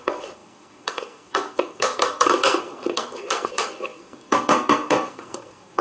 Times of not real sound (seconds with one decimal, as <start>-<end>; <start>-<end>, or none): 0.0-5.8